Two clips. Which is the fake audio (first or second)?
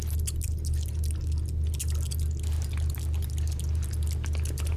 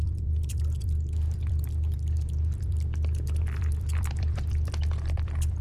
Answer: second